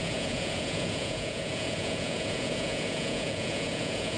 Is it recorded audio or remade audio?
remade